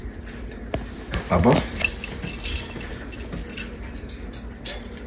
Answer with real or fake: real